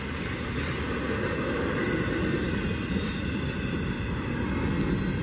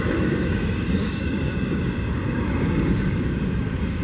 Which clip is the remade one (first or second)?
second